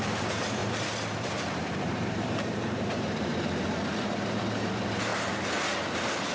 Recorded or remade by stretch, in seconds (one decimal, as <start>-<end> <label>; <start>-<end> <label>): 0.0-5.1 remade; 5.1-6.3 recorded